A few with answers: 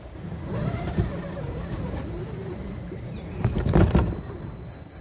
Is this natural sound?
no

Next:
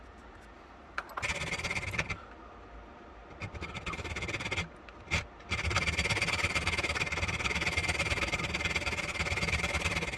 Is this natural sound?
yes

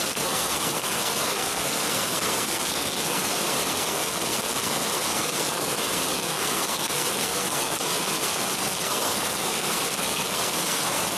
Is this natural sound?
no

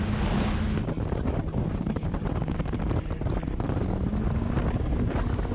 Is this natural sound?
yes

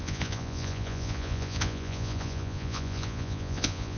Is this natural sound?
no